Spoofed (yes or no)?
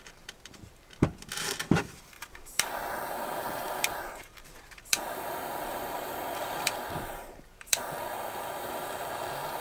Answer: yes